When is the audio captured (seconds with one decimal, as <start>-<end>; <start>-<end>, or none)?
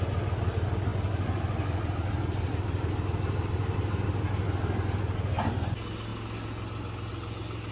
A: 0.0-7.7